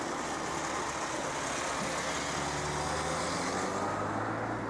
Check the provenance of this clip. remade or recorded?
recorded